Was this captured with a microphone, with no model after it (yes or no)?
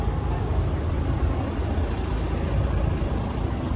yes